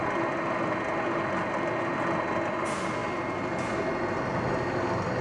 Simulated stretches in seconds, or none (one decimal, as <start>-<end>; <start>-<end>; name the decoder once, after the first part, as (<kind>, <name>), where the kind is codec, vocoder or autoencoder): none